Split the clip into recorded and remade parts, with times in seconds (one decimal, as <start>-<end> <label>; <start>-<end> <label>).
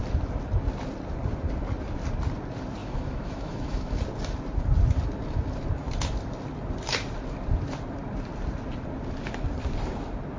0.0-2.8 recorded; 2.8-4.0 remade; 4.0-10.4 recorded